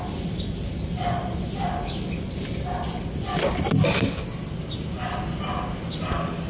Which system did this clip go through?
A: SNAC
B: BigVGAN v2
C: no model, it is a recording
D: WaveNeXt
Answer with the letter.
C